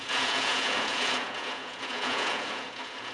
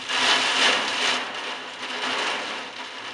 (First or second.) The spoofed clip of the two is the first